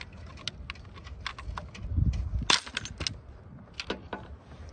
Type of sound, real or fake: real